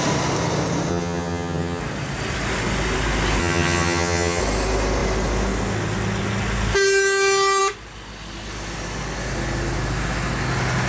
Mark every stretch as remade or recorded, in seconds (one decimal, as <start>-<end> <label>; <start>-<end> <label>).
0.0-0.9 recorded; 0.9-1.8 remade; 1.8-3.4 recorded; 3.4-4.4 remade; 4.4-10.9 recorded